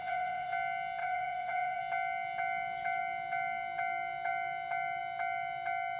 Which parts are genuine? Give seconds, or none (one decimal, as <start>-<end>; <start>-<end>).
0.5-1.0; 1.8-6.0